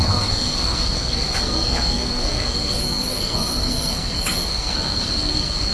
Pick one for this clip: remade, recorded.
remade